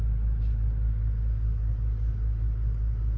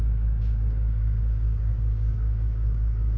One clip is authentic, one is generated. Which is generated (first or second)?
second